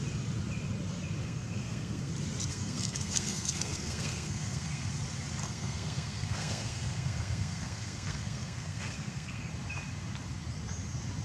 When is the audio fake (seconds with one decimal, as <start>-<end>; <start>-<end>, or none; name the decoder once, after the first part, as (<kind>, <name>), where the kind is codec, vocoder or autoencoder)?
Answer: 1.2-2.1 (codec, SNAC); 2.5-4.9; 5.4-9.5